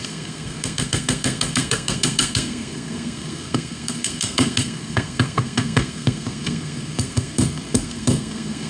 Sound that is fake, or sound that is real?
fake